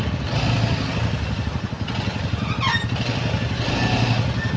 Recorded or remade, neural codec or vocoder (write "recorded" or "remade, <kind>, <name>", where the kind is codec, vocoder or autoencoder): recorded